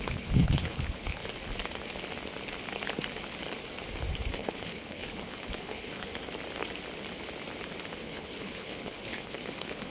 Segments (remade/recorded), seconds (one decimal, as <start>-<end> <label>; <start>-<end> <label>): 0.0-1.2 remade; 1.2-4.3 recorded; 4.3-6.1 remade; 6.1-8.0 recorded; 8.0-9.9 remade